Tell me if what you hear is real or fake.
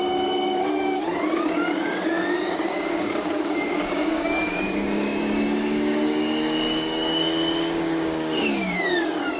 fake